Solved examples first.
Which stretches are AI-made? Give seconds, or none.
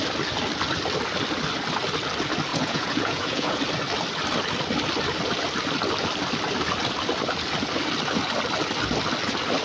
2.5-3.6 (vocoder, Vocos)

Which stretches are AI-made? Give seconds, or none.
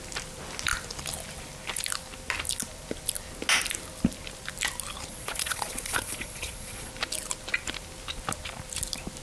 5.1-6.9 (vocoder, Vocos)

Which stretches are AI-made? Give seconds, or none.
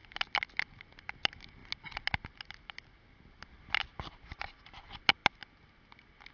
none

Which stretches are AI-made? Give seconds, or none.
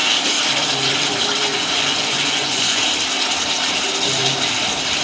1.5-2.8 (vocoder, Vocos)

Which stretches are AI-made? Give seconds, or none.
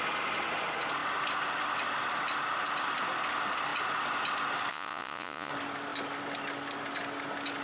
4.7-5.5 (vocoder, Vocos)